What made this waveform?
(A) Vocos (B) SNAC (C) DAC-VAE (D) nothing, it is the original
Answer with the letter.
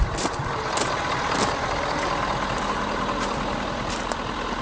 D